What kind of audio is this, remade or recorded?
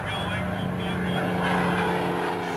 recorded